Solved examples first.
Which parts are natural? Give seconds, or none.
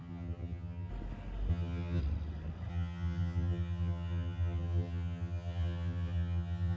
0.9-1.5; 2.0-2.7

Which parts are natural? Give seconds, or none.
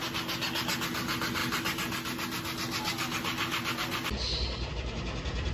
0.0-5.5